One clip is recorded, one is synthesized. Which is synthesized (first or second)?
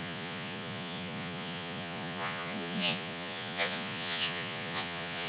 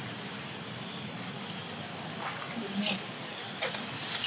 first